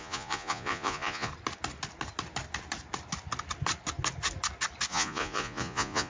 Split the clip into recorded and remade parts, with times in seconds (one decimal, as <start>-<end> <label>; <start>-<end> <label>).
0.0-1.3 remade; 1.3-4.9 recorded; 4.9-6.1 remade